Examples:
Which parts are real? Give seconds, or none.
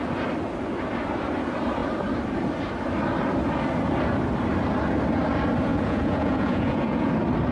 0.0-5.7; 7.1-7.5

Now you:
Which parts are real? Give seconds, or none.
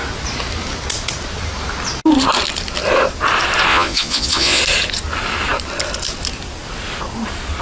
0.0-3.7; 4.6-7.6